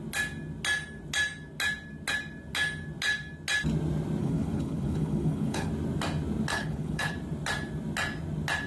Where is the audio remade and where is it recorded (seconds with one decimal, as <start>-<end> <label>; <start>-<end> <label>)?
0.0-4.2 recorded; 4.2-5.7 remade; 5.7-6.5 recorded; 6.5-7.1 remade; 7.1-8.7 recorded